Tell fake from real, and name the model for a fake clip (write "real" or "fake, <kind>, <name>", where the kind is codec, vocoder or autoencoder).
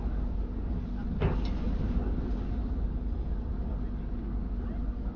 real